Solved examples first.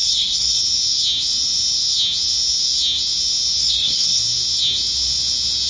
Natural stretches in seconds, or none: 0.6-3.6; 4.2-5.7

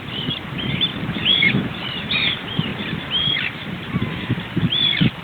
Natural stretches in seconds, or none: none

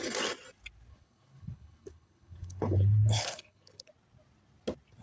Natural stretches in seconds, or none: 0.0-0.9; 3.9-5.0

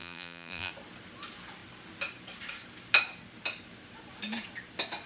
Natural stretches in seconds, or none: 0.7-5.1

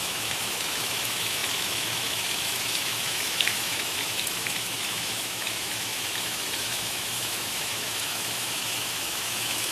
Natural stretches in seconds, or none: none

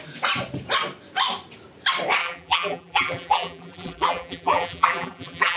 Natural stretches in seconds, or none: 0.0-2.2

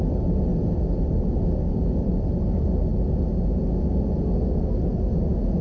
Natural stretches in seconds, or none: 0.0-0.5; 3.0-5.6